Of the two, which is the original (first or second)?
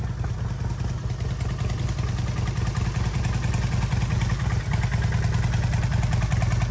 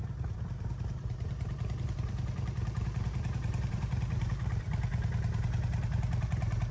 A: first